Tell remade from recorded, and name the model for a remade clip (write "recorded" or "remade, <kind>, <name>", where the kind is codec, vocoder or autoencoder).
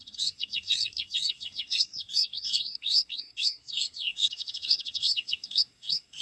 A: remade, codec, SNAC